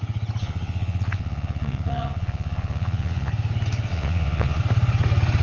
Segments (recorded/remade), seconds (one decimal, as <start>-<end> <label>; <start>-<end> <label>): 0.0-0.4 recorded; 0.4-3.3 remade; 3.3-3.9 recorded; 3.9-4.6 remade; 4.6-5.4 recorded